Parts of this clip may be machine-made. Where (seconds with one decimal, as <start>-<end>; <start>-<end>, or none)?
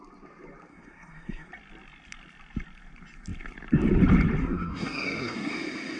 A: 0.7-1.5; 4.4-5.5